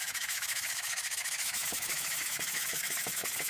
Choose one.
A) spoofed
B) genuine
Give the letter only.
A